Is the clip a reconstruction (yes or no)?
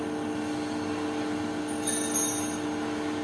no